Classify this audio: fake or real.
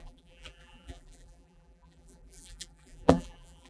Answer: fake